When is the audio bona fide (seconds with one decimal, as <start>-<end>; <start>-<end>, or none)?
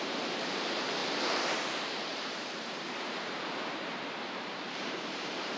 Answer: none